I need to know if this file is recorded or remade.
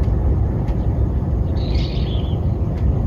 recorded